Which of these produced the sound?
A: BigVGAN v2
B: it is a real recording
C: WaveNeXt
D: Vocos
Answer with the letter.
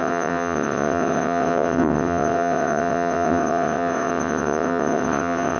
C